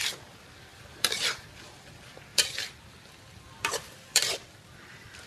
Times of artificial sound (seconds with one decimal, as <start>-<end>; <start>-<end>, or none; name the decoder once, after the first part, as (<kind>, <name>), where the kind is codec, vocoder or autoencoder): 0.7-1.9 (vocoder, BigVGAN v2); 2.3-5.3